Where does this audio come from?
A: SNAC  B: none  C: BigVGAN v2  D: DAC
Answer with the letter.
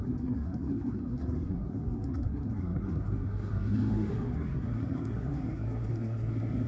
A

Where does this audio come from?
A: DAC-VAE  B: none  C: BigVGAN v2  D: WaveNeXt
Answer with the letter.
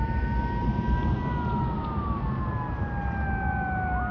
B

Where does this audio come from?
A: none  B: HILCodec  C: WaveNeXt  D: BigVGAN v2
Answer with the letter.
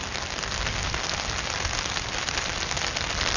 A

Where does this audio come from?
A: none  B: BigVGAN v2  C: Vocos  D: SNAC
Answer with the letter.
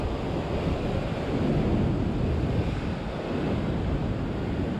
A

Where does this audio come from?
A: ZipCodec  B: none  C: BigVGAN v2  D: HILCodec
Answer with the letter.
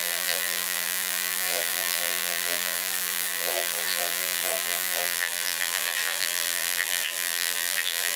C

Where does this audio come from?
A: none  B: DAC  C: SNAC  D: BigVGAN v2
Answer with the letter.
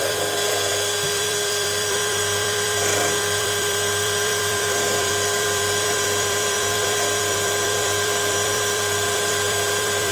D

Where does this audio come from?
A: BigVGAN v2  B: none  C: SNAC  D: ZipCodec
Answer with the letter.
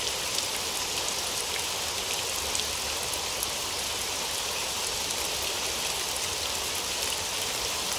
B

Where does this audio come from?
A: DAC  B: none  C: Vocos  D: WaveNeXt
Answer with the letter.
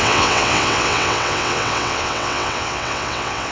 D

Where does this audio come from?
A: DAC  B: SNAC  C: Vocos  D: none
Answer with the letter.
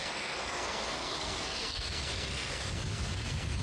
B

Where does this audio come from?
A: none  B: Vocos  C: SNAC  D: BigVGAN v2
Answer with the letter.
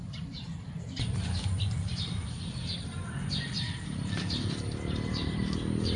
D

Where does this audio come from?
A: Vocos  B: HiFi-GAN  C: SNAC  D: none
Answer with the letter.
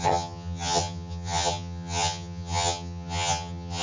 B